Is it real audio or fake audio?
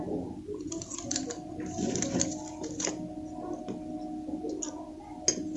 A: real